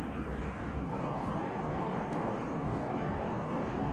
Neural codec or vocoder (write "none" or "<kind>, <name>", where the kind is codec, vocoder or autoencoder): codec, DAC